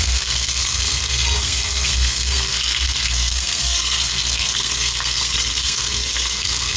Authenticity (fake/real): fake